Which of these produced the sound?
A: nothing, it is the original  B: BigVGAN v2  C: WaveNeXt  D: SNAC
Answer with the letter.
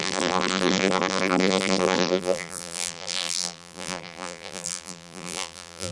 B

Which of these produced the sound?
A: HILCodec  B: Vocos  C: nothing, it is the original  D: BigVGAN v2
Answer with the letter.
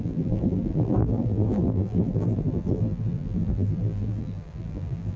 D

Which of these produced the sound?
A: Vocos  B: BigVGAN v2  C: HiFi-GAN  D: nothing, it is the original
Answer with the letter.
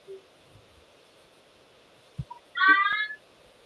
D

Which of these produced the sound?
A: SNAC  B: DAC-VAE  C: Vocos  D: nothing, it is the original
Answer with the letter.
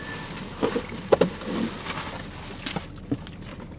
D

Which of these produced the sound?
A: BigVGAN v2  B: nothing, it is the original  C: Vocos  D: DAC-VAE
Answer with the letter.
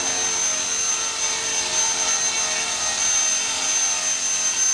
B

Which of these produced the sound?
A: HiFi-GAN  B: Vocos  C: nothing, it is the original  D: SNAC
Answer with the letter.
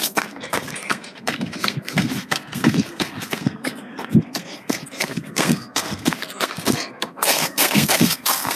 D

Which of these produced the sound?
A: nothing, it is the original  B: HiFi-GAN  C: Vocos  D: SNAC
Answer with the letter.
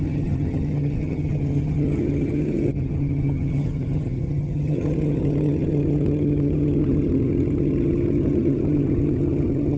B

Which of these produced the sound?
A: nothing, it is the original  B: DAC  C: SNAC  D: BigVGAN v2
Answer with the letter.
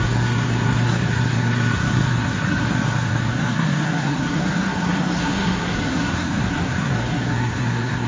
C